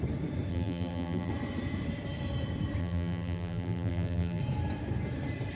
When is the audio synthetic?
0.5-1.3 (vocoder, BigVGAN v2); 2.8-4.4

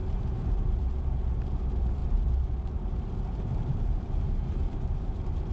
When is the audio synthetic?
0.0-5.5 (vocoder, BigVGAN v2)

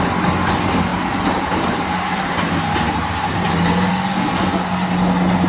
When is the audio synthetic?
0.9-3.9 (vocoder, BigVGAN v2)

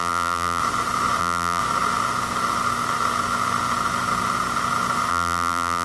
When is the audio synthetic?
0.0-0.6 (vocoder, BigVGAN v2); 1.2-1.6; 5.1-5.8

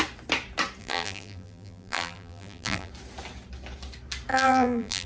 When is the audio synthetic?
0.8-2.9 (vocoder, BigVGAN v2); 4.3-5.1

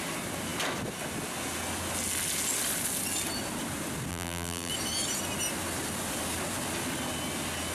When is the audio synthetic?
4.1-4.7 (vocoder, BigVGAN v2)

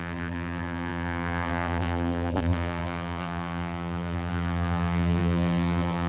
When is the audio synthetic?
0.0-6.1 (vocoder, BigVGAN v2)

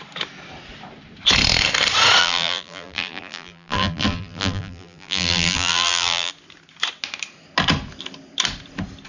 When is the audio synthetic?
2.2-6.3 (vocoder, BigVGAN v2)